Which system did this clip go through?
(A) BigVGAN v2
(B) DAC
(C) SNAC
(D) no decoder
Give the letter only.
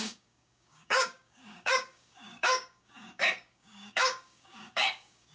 B